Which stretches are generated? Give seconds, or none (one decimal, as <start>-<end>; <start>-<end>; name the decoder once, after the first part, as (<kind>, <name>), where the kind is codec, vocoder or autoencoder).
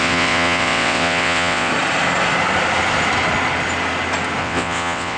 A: 0.0-1.7 (vocoder, WaveNeXt); 4.4-5.2